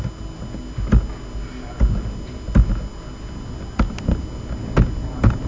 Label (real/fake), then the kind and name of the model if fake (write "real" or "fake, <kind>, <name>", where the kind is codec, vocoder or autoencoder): real